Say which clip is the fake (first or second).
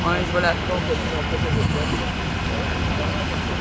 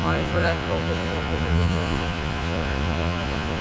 second